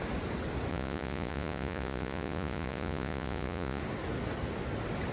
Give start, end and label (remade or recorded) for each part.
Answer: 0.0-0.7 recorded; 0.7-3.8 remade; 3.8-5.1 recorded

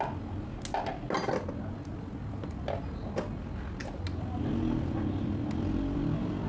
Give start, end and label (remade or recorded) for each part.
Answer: 0.0-6.5 recorded

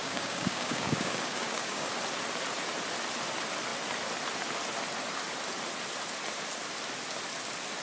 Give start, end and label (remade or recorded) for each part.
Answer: 0.0-1.9 remade; 1.9-7.8 recorded

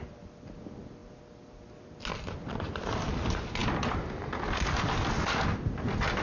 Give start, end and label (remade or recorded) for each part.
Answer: 0.0-6.2 recorded

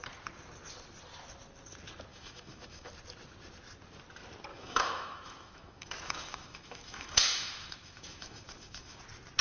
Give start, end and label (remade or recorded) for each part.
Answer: 0.0-2.1 recorded; 2.1-2.9 remade; 2.9-4.5 recorded; 4.5-9.0 remade; 9.0-9.4 recorded

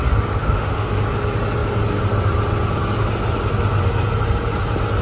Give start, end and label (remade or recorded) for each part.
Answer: 0.0-0.4 recorded; 0.4-1.0 remade; 1.0-5.0 recorded